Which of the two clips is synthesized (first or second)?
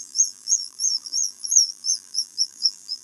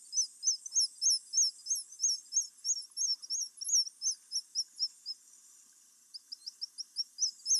first